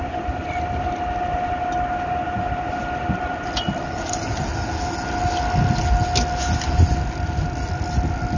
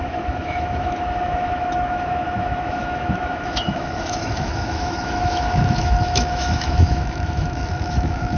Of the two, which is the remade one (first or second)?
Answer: second